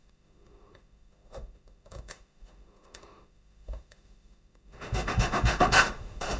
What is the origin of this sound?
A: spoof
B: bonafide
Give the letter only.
A